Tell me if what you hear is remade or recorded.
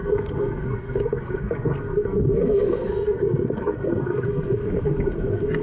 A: remade